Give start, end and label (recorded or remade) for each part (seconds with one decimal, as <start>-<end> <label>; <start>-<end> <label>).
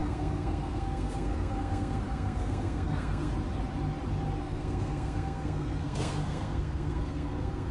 0.0-3.3 remade; 3.3-4.4 recorded; 4.4-7.7 remade